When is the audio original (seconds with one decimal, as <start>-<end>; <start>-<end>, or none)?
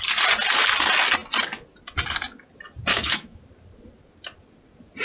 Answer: 0.0-2.9; 3.4-5.0